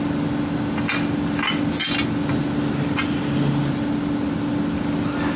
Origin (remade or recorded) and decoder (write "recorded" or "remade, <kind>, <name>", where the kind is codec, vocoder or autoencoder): recorded